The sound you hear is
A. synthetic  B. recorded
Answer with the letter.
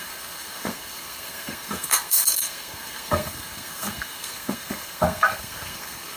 A